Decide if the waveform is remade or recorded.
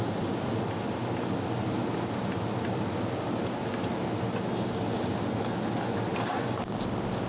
recorded